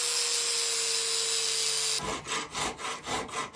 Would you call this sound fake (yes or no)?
no